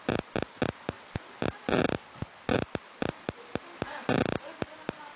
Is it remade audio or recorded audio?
recorded